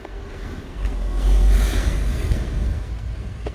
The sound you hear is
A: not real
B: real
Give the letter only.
A